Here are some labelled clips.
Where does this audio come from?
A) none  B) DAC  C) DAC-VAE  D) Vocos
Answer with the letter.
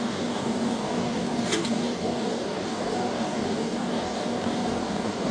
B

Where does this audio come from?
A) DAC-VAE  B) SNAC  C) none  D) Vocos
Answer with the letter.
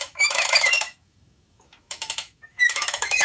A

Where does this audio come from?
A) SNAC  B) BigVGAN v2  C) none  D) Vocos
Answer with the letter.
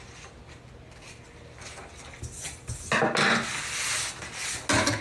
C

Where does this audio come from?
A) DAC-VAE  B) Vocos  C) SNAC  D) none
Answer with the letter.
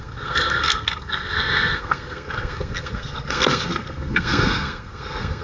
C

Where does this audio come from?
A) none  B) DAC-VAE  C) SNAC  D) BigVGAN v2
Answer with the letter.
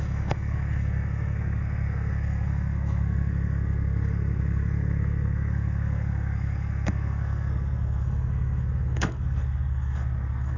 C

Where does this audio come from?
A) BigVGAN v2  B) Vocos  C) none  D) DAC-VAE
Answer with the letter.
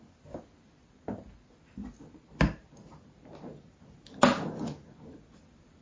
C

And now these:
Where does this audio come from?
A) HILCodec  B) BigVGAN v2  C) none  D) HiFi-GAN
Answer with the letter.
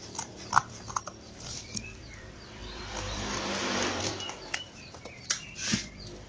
B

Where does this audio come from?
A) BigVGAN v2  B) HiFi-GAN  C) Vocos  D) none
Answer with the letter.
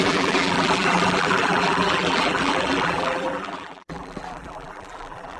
A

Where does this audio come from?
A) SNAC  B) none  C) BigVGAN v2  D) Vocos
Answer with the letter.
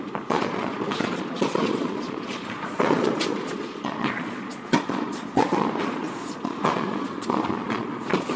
D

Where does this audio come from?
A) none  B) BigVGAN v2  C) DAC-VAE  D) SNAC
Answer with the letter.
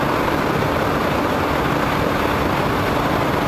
A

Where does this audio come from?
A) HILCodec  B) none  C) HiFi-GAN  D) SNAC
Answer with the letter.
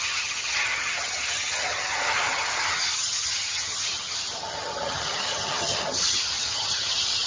C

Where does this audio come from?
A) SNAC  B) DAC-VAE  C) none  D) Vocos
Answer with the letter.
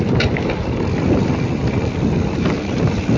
C